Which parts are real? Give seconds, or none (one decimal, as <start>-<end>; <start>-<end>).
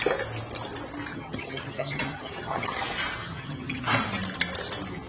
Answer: 0.0-1.1; 2.8-3.2; 3.8-5.1